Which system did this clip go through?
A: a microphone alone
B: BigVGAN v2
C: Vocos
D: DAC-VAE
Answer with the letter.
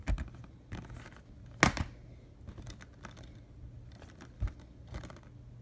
A